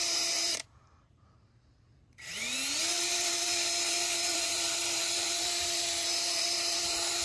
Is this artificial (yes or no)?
yes